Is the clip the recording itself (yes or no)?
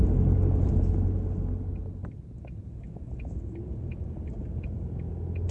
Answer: yes